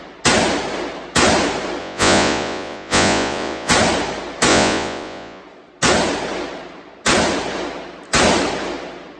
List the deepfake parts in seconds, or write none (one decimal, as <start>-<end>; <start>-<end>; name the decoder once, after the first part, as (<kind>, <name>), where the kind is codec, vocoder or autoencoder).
1.8-3.7 (vocoder, Vocos); 4.5-5.4